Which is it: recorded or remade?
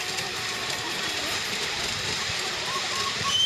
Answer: remade